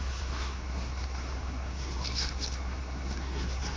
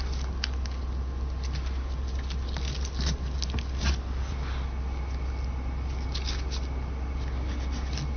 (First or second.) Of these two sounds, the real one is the second